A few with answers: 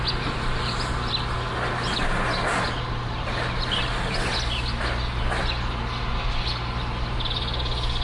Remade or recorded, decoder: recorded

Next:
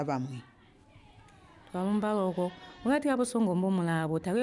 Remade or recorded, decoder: recorded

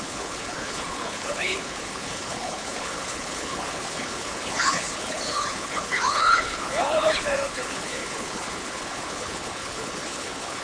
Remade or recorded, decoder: remade, codec, HILCodec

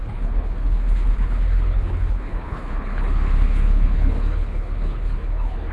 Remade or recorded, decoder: remade, codec, HILCodec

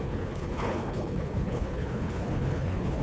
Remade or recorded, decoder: remade, codec, HILCodec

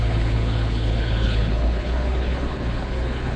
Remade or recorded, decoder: remade, codec, HILCodec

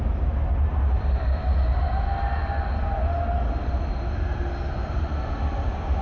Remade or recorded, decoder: recorded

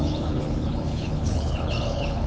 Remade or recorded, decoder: remade, codec, HILCodec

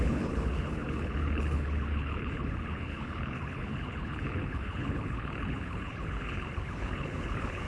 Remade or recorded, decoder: remade, codec, HILCodec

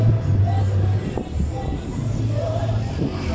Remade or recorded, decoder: recorded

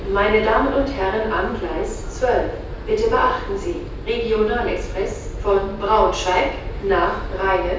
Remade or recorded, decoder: recorded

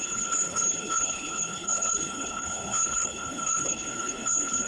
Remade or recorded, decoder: remade, codec, HILCodec